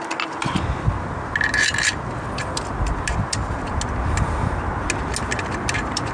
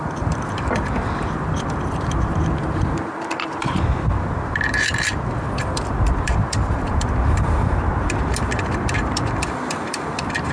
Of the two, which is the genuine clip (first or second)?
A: first